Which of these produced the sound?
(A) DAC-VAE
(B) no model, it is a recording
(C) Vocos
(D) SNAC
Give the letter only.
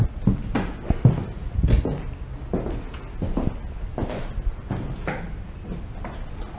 B